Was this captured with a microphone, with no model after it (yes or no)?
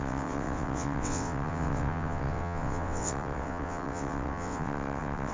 no